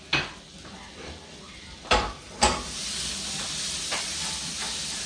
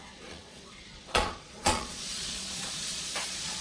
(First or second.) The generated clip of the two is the second